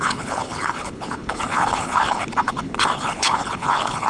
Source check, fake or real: fake